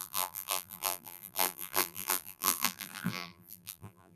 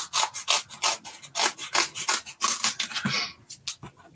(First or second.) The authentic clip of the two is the second